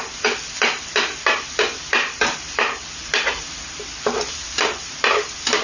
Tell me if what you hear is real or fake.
real